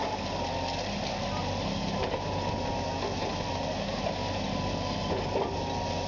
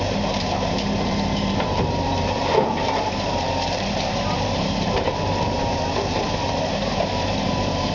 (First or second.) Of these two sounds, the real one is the first